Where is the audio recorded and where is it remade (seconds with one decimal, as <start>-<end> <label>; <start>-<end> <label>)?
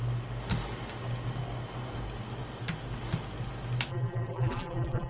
0.0-3.9 recorded; 3.9-5.1 remade